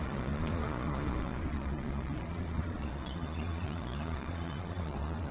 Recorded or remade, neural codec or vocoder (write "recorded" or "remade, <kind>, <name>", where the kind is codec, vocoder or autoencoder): remade, vocoder, Vocos